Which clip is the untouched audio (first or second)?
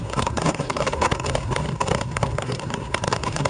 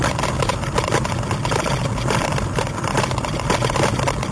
second